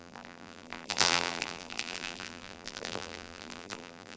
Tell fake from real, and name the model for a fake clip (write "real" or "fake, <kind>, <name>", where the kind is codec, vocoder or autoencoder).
fake, vocoder, BigVGAN v2